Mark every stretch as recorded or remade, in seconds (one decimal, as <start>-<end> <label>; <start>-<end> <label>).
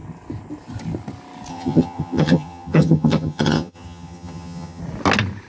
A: 0.0-1.5 recorded; 1.5-4.8 remade; 4.8-5.5 recorded